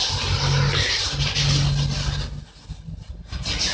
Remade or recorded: recorded